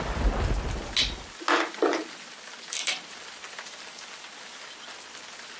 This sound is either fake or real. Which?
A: real